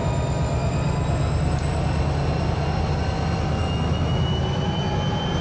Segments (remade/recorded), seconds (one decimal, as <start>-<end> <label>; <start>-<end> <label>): 0.0-3.6 recorded; 3.6-4.4 remade; 4.4-5.4 recorded